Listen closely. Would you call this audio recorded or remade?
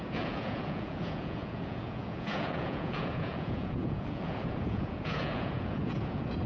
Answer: remade